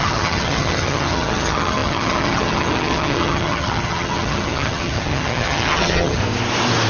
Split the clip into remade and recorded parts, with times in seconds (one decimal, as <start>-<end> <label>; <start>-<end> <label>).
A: 0.0-6.2 remade; 6.2-6.9 recorded